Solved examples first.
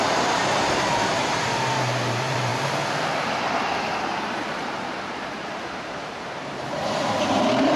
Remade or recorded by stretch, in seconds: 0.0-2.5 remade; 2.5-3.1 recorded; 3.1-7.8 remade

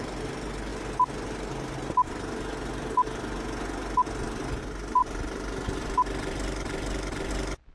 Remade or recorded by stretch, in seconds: 0.0-7.7 recorded

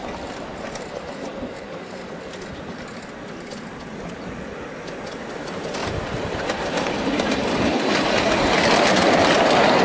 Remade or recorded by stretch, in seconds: 0.0-0.5 recorded; 0.5-2.0 remade; 2.0-5.8 recorded; 5.8-7.3 remade; 7.3-9.8 recorded

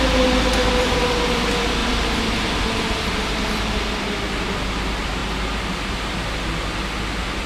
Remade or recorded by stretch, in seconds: 0.0-1.8 recorded; 1.8-2.6 remade; 2.6-7.5 recorded

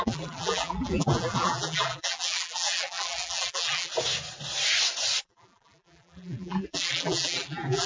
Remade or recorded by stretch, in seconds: 0.0-3.9 remade; 3.9-5.2 recorded; 5.2-7.9 remade